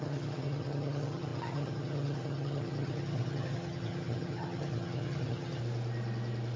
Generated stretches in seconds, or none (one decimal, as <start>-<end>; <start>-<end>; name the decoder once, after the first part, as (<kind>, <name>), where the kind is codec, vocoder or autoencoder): 0.0-5.6 (vocoder, HiFi-GAN)